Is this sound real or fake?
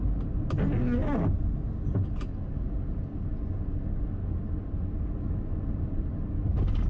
real